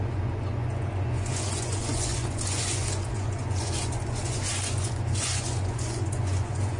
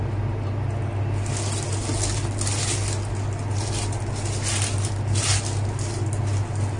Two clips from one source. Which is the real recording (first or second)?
second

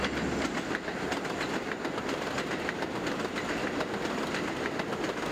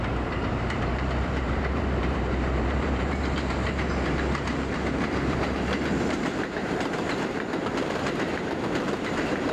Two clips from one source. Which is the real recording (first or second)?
first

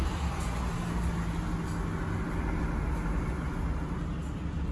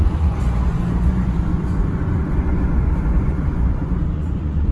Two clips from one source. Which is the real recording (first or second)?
first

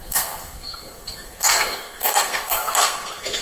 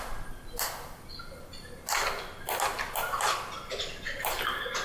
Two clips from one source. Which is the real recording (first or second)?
second